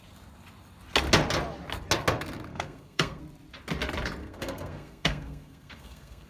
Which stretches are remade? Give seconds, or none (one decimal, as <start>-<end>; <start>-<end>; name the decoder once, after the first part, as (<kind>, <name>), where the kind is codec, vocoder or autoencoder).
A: 2.5-3.2 (codec, SNAC); 4.2-6.3